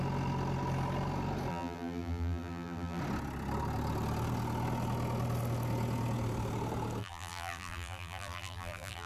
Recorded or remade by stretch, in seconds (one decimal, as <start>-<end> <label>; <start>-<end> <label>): 0.0-1.5 recorded; 1.5-3.0 remade; 3.0-7.0 recorded; 7.0-9.1 remade